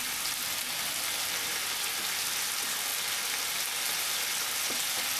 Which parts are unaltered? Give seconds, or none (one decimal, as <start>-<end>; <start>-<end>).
0.0-5.2